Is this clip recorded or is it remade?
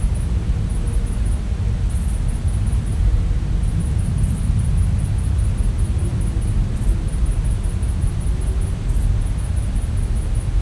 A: recorded